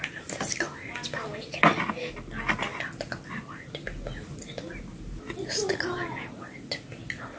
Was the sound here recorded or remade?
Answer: recorded